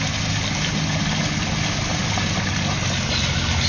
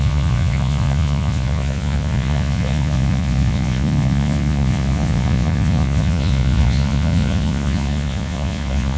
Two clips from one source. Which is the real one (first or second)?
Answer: first